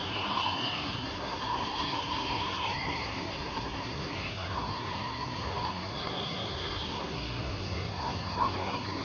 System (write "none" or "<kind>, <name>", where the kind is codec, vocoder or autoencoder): codec, SNAC